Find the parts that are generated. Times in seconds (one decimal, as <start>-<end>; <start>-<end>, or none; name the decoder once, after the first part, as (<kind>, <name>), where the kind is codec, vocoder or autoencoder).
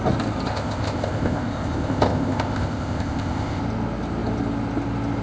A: 0.5-3.6 (codec, ZipCodec)